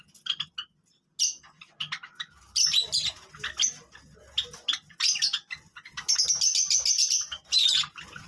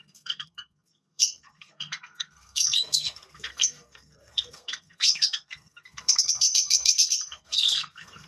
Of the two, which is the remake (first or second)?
second